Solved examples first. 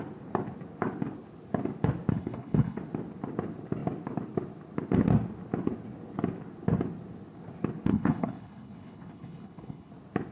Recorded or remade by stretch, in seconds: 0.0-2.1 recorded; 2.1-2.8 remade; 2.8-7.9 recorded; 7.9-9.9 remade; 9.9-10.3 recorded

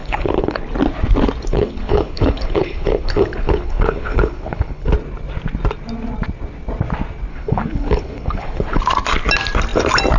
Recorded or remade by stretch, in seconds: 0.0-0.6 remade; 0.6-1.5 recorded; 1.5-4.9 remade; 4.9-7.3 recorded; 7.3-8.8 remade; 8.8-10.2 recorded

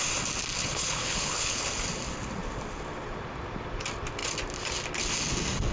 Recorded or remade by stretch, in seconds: 0.0-0.6 recorded; 0.6-1.6 remade; 1.6-5.7 recorded

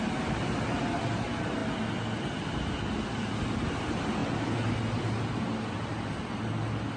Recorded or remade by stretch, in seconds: 0.0-7.0 recorded